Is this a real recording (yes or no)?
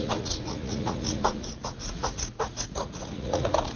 no